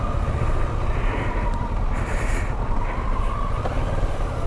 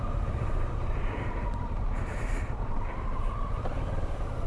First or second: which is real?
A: first